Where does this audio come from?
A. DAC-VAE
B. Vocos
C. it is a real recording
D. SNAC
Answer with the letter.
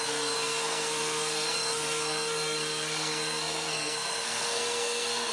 D